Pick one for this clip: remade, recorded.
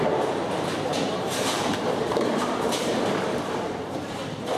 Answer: remade